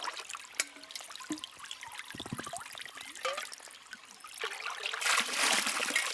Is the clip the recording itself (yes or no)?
yes